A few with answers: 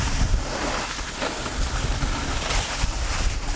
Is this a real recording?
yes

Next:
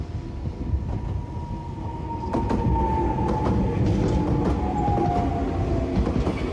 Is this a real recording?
yes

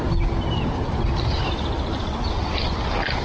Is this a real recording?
yes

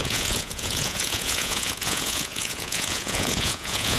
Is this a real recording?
no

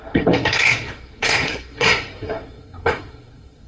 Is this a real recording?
no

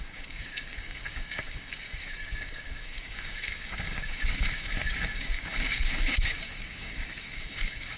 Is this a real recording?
no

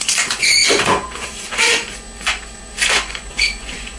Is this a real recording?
no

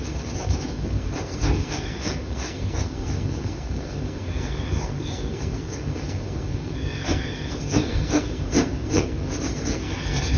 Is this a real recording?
no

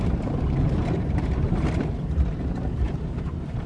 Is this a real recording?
no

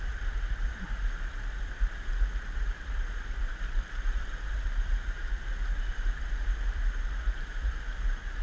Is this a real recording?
no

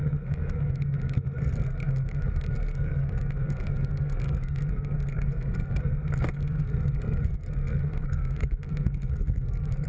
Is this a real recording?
no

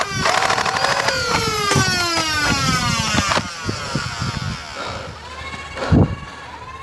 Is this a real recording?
yes